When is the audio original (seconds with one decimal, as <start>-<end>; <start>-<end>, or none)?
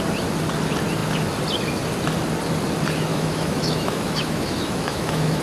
0.0-3.1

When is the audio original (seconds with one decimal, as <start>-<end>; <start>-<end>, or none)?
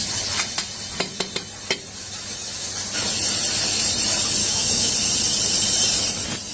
0.0-2.0; 2.7-4.4; 4.9-6.5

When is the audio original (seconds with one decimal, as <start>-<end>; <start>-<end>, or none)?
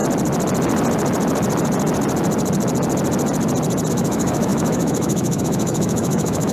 0.0-3.9